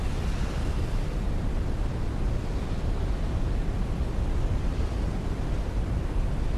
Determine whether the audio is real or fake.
real